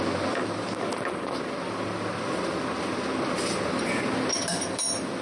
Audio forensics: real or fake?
real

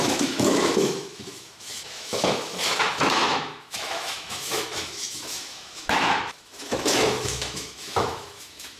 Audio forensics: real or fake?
fake